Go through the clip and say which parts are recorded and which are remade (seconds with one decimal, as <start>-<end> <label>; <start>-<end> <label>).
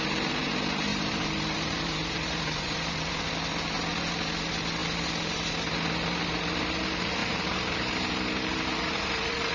0.0-0.9 recorded; 0.9-3.1 remade; 3.1-7.2 recorded; 7.2-9.5 remade